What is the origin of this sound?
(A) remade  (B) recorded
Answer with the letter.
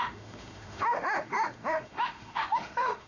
A